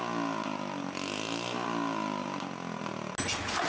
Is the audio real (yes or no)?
yes